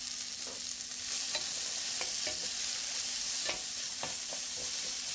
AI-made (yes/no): no